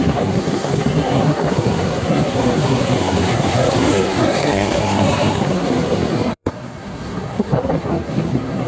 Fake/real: fake